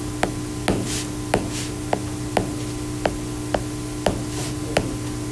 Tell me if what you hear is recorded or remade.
recorded